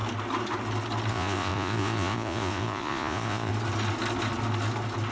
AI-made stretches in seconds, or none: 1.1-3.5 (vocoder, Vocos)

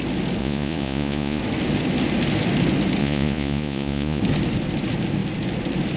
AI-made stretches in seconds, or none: 0.4-1.4 (vocoder, Vocos); 3.0-4.2